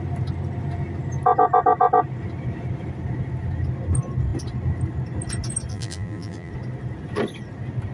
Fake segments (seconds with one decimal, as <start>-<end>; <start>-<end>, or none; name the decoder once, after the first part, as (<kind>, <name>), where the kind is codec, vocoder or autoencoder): 5.7-6.5 (vocoder, BigVGAN v2)